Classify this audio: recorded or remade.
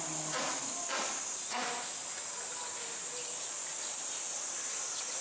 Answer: recorded